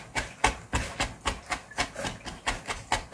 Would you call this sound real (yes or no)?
yes